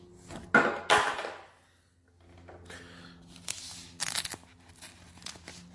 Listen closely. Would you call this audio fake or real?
real